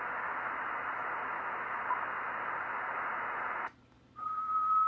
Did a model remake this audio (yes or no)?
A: no